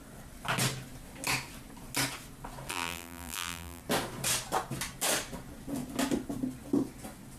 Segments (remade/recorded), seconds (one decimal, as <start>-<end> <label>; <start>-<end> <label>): 0.0-2.7 recorded; 2.7-3.8 remade; 3.8-7.4 recorded